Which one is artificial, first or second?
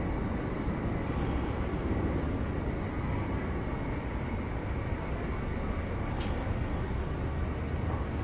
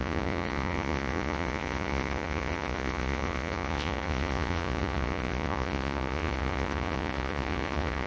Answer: second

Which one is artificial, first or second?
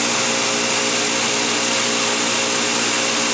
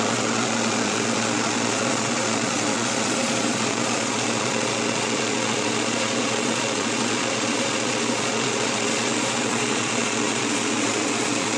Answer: second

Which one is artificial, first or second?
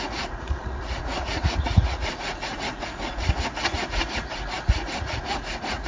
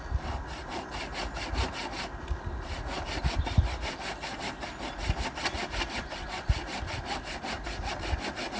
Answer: first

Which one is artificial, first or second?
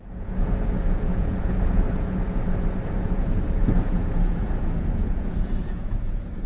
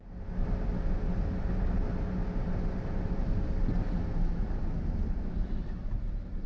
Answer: first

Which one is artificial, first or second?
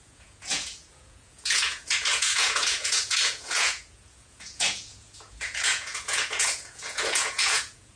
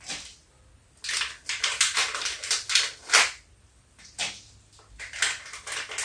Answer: first